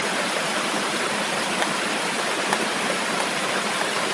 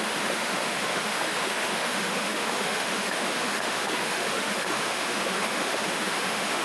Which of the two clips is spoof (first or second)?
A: second